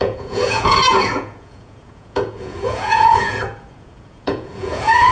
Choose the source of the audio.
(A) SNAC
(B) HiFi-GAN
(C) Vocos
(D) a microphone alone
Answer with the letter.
C